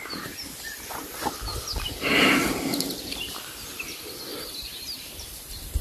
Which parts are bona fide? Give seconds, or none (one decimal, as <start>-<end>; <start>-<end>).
0.0-4.3